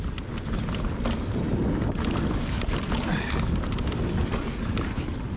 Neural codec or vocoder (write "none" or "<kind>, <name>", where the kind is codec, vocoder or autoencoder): none